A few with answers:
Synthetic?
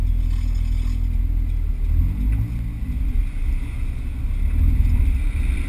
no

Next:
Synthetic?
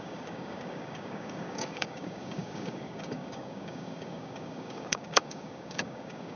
yes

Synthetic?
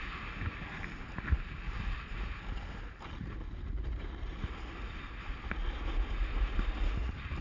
no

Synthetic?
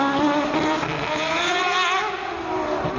no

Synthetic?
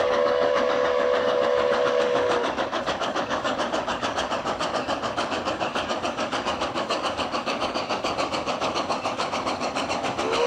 yes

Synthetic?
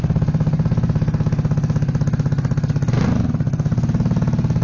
no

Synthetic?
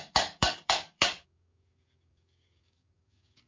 yes